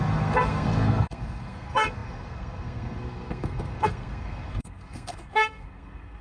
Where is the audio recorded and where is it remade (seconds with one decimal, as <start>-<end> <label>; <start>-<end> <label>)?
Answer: 0.0-6.2 remade